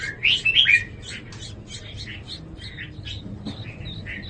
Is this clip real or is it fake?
real